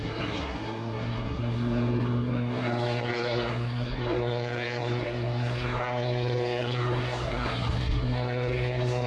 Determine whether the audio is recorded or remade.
remade